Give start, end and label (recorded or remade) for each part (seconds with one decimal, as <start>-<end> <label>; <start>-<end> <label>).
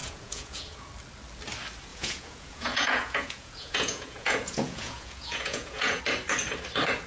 0.0-0.9 remade; 0.9-1.9 recorded; 1.9-6.0 remade; 6.0-7.1 recorded